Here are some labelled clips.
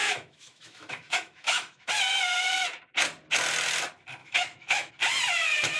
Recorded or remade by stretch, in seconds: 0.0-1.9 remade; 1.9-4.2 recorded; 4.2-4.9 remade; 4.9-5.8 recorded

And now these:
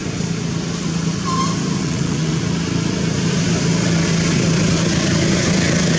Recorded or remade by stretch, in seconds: 0.0-1.8 recorded; 1.8-2.4 remade; 2.4-6.0 recorded

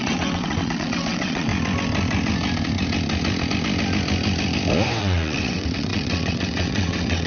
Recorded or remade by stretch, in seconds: 0.0-1.5 remade; 1.5-5.0 recorded; 5.0-7.3 remade

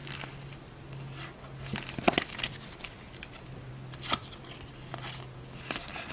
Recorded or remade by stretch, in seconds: 0.0-6.1 recorded